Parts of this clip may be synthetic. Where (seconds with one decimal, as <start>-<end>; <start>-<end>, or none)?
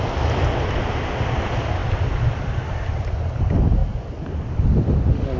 none